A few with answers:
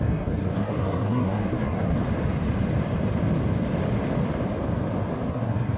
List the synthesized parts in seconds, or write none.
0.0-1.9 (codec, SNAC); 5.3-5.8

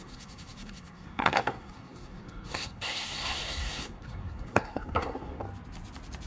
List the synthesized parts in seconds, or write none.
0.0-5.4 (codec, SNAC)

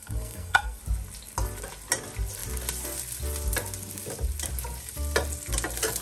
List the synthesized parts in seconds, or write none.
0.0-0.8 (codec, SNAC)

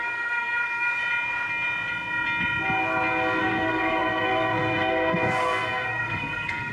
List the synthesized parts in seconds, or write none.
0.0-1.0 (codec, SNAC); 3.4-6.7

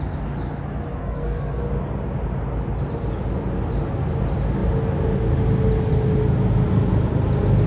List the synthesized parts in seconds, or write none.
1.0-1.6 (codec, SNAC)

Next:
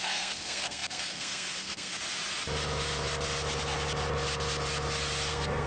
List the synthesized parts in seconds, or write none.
0.0-1.9 (codec, SNAC); 5.3-5.7

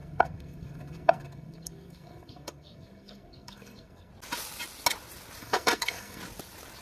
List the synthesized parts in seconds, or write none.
0.0-4.1 (codec, SNAC); 5.4-6.2